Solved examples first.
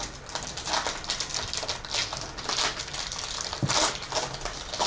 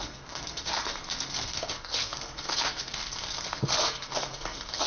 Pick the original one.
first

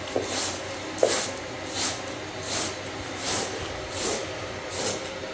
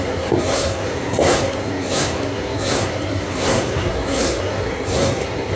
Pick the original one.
first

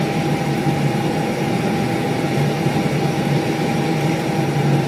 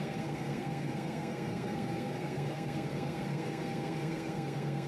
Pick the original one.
first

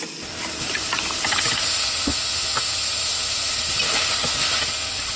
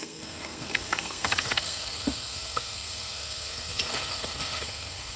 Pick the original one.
first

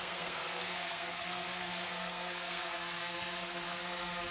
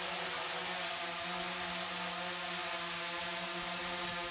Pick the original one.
second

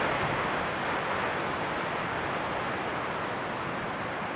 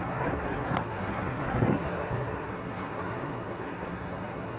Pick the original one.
first